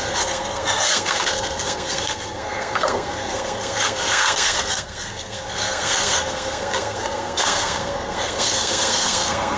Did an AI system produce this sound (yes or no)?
yes